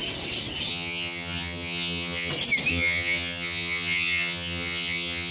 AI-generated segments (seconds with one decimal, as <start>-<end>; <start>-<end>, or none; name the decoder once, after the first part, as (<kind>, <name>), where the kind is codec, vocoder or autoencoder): 0.7-2.3 (vocoder, HiFi-GAN); 2.7-5.3